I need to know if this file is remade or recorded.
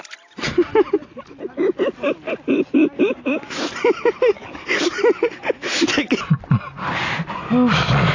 recorded